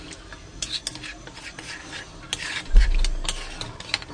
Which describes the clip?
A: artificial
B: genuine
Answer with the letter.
B